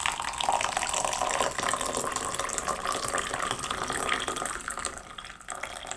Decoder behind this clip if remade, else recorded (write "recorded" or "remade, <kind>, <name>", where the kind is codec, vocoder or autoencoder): recorded